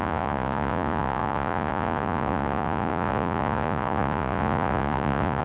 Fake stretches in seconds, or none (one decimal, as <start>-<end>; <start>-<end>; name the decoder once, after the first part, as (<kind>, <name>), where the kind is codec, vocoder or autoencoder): 0.0-5.4 (vocoder, Vocos)